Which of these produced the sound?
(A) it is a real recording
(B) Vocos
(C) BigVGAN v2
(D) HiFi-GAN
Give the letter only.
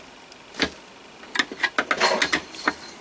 A